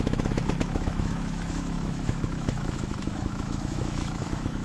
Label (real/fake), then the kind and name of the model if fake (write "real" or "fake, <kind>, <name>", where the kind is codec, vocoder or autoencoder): fake, autoencoder, DAC-VAE